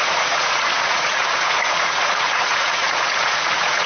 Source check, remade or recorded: remade